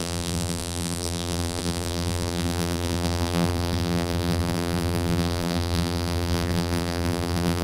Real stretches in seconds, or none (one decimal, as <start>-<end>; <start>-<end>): none